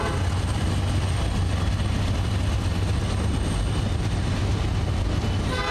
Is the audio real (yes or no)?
yes